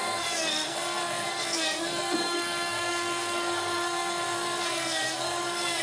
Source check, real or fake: fake